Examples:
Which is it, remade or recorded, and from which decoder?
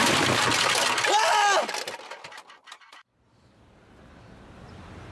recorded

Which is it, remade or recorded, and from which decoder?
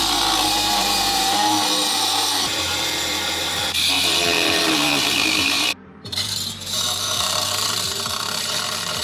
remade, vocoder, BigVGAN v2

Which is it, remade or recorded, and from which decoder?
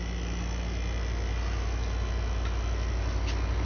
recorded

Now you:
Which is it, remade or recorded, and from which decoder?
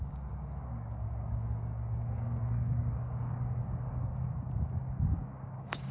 remade, codec, DAC